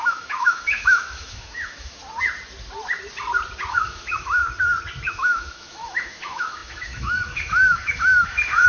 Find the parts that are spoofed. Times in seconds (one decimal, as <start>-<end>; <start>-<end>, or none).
0.0-2.0; 3.7-4.4; 5.1-8.7